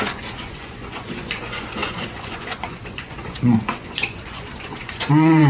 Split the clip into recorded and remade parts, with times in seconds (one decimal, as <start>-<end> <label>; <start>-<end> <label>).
0.0-5.5 remade